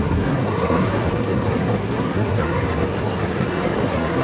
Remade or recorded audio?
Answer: remade